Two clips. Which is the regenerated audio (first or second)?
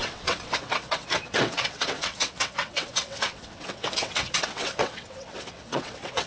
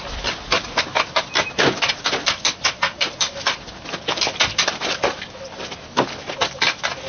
first